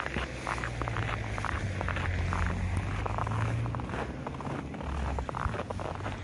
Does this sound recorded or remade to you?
recorded